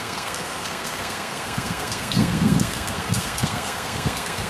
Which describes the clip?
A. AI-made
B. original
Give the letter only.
A